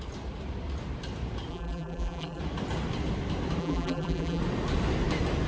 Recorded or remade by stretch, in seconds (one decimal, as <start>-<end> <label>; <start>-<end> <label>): 0.0-1.5 recorded; 1.5-2.4 remade; 2.4-3.6 recorded; 3.6-4.4 remade; 4.4-5.5 recorded